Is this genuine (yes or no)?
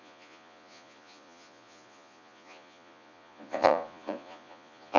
no